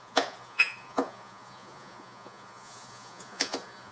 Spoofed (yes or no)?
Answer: yes